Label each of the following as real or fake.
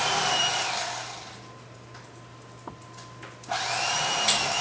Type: real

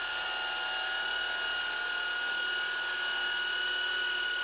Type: real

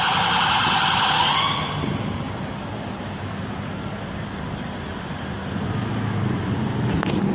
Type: real